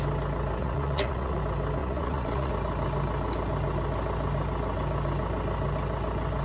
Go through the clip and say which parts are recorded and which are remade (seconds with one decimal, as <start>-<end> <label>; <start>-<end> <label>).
0.0-0.6 recorded; 0.6-1.4 remade; 1.4-1.8 recorded; 1.8-2.5 remade; 2.5-6.4 recorded